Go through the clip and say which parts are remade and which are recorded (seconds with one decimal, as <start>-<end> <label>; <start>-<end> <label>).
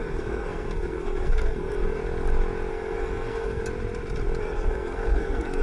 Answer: 0.0-2.0 remade; 2.0-2.7 recorded; 2.7-3.6 remade; 3.6-4.4 recorded; 4.4-5.6 remade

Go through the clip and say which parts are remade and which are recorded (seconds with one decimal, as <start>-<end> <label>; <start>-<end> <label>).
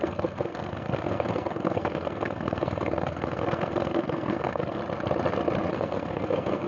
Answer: 0.0-4.8 remade; 4.8-5.7 recorded; 5.7-6.7 remade